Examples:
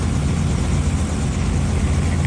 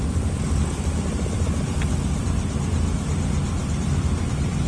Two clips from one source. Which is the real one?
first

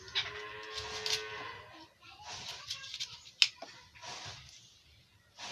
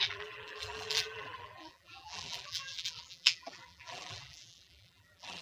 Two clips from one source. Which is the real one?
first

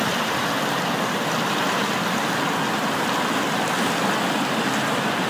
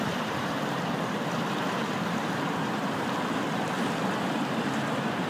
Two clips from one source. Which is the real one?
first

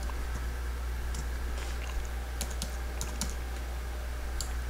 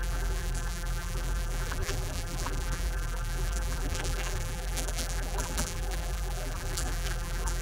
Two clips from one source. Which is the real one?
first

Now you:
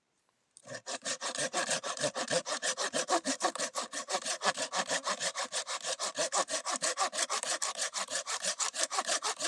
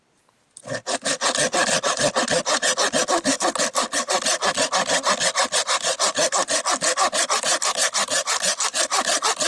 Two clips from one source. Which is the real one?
second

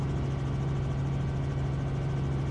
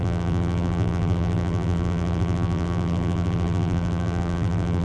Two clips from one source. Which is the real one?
first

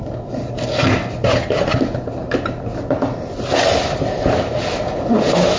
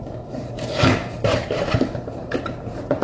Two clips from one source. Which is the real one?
first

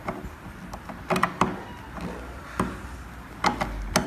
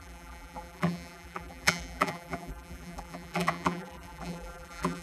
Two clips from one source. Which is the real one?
first